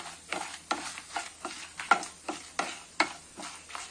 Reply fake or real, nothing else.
real